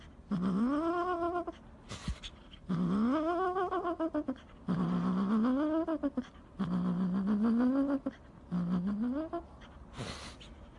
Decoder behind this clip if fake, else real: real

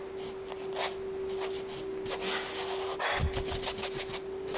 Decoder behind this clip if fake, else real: real